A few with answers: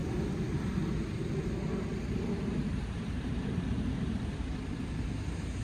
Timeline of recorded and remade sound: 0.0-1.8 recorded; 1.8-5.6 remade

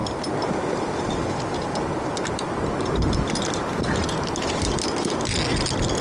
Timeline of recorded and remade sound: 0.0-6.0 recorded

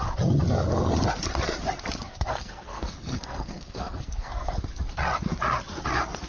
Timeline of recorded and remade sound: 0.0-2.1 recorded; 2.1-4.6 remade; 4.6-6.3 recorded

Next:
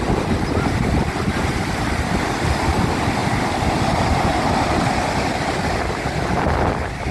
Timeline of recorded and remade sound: 0.0-7.1 recorded

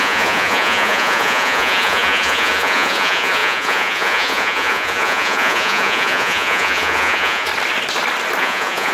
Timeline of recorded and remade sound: 0.0-7.5 remade; 7.5-8.4 recorded; 8.4-8.9 remade

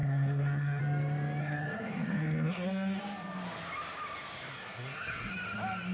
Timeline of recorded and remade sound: 0.0-0.8 remade; 0.8-1.4 recorded; 1.4-3.0 remade; 3.0-4.5 recorded; 4.5-5.3 remade; 5.3-5.9 recorded

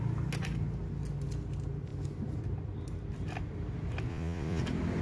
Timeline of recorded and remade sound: 0.0-4.1 recorded; 4.1-4.6 remade; 4.6-5.0 recorded